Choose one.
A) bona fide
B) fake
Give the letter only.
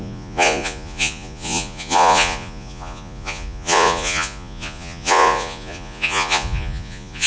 B